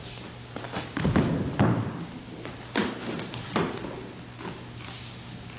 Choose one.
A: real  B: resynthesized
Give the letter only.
A